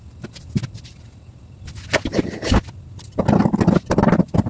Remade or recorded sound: recorded